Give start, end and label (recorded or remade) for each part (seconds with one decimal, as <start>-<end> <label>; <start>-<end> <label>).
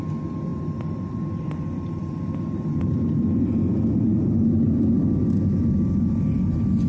0.0-0.5 recorded; 0.5-3.6 remade; 3.6-6.9 recorded